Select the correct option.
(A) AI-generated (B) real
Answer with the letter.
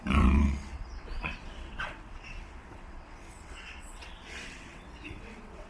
A